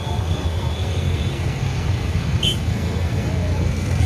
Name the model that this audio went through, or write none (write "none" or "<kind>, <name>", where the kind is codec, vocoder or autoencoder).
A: codec, SNAC